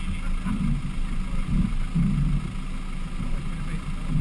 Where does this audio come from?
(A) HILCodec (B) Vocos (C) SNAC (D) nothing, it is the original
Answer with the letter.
D